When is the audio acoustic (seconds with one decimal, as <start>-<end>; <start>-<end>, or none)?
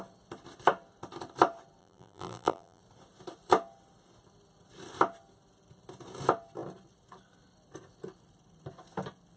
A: 0.0-1.8; 2.8-9.4